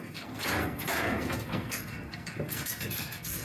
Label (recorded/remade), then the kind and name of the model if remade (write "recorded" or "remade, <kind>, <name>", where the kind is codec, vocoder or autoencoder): remade, codec, SNAC